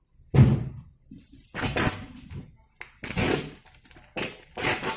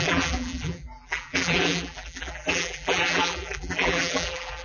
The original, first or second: first